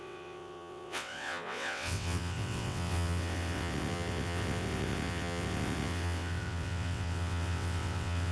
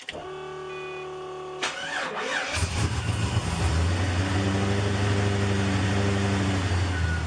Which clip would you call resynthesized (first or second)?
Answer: first